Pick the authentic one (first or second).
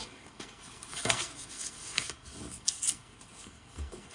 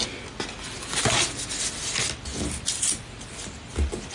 second